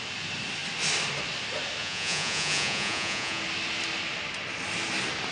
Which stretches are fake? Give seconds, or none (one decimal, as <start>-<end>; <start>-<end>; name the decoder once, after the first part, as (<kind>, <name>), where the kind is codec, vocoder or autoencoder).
1.8-3.4 (vocoder, Vocos)